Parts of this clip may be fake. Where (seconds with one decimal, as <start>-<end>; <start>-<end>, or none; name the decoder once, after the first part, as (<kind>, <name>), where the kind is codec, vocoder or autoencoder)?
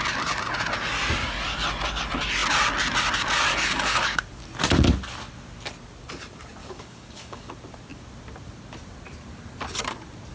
3.5-4.2 (codec, DAC); 6.6-7.5